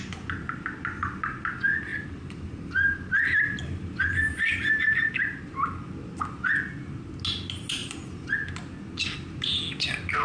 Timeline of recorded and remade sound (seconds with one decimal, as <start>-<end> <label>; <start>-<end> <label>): 0.0-10.2 recorded